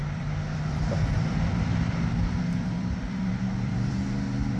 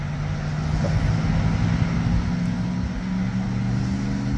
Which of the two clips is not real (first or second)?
first